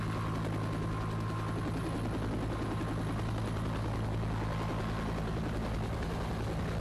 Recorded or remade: recorded